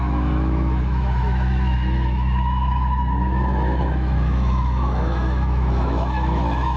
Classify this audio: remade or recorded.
remade